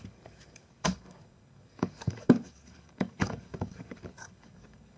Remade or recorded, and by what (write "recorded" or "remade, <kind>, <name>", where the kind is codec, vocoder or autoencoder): remade, codec, DAC